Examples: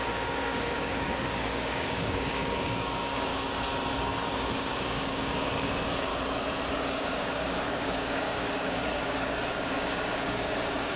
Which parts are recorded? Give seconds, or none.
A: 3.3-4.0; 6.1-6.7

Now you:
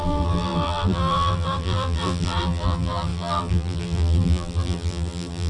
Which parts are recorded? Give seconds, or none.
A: none

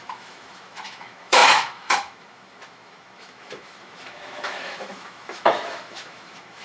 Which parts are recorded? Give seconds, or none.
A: none

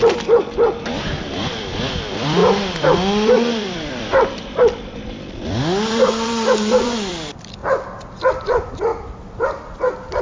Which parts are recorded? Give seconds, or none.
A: 7.6-8.3; 8.9-10.2

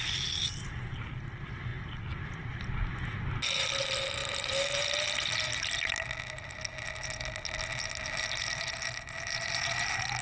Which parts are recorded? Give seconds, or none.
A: 0.0-10.2